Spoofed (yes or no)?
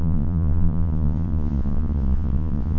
yes